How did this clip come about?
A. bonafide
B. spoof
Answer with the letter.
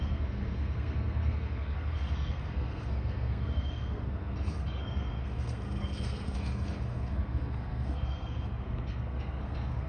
B